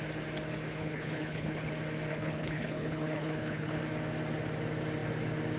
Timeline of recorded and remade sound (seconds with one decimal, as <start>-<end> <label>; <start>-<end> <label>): 0.0-0.8 recorded; 0.8-1.7 remade; 1.7-2.1 recorded; 2.1-3.8 remade; 3.8-5.6 recorded